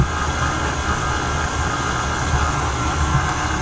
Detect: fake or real real